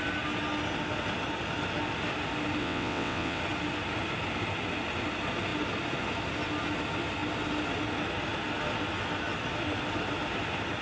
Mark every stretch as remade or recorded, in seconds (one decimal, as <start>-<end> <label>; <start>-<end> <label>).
0.0-2.6 recorded; 2.6-3.4 remade; 3.4-10.8 recorded